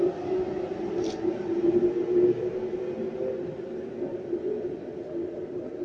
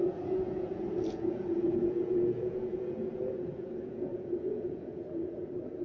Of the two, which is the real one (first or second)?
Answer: first